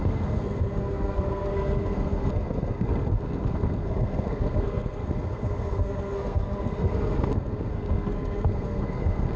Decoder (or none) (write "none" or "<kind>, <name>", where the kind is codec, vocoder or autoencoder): codec, SNAC